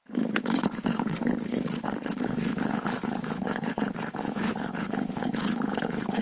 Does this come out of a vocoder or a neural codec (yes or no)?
yes